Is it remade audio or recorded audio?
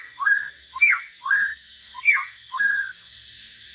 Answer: remade